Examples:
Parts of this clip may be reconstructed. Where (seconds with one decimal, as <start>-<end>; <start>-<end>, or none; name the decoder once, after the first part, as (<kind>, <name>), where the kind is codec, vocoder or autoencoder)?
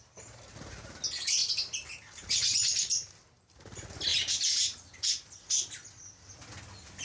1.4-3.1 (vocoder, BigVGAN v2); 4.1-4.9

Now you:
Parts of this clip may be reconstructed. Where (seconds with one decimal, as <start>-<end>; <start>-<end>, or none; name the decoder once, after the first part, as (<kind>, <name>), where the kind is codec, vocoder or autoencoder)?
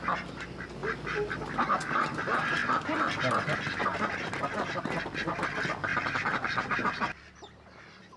2.6-3.3 (vocoder, BigVGAN v2); 3.9-4.4; 5.9-8.2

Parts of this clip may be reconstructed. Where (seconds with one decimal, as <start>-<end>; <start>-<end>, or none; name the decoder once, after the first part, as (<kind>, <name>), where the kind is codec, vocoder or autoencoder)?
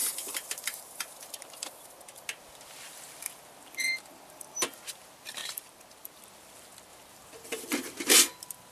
0.0-2.2 (vocoder, BigVGAN v2); 5.4-6.2; 6.9-8.1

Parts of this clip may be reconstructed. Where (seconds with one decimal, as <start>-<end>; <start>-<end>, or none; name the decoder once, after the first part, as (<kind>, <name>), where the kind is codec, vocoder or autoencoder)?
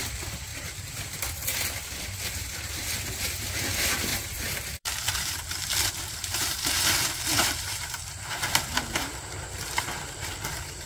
0.5-1.0 (vocoder, BigVGAN v2); 4.1-8.2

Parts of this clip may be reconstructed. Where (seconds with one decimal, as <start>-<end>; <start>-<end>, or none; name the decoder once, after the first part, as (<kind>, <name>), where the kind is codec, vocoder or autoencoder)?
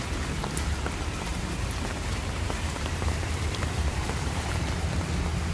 1.3-4.6 (vocoder, BigVGAN v2)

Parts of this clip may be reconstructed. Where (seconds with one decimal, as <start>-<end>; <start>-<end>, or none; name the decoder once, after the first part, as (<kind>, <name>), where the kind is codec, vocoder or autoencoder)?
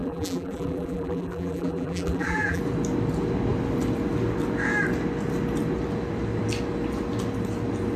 0.0-2.6 (vocoder, BigVGAN v2)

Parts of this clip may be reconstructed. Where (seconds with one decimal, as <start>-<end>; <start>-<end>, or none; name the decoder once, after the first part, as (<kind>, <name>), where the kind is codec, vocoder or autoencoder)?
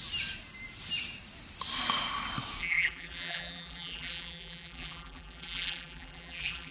2.6-6.7 (vocoder, BigVGAN v2)